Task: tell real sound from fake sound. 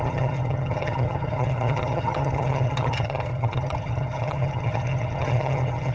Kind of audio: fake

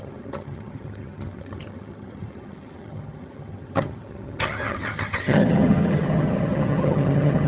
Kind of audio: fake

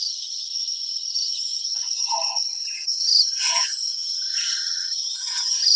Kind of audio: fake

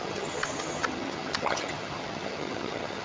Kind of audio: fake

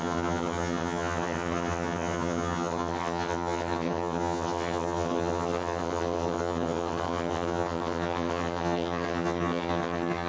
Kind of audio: fake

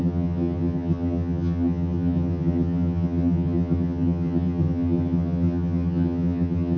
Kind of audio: fake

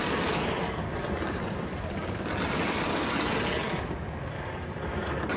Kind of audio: real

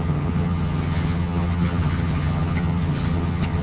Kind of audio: fake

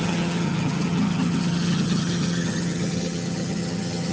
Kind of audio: fake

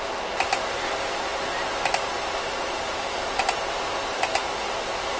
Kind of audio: real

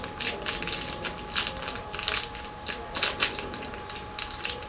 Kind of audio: real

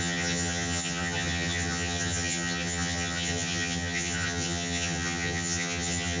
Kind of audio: fake